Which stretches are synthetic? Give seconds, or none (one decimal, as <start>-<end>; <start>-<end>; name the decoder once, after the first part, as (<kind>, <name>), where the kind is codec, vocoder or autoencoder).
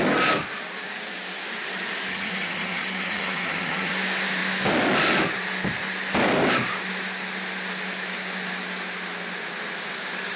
2.1-3.9 (vocoder, HiFi-GAN)